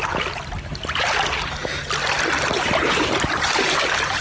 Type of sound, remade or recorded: recorded